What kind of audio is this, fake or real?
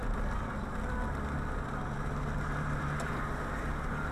fake